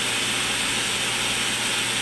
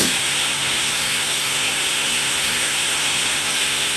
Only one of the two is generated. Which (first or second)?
second